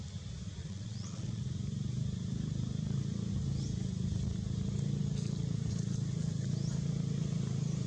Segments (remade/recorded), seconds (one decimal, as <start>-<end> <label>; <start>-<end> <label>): 0.0-0.6 recorded; 0.6-1.4 remade; 1.4-7.9 recorded